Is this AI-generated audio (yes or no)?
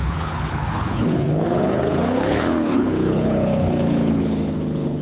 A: yes